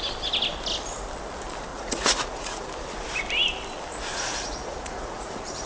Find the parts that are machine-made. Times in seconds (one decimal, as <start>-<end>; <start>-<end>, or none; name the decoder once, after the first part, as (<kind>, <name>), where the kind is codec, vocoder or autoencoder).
1.7-2.7 (vocoder, Vocos); 4.1-5.7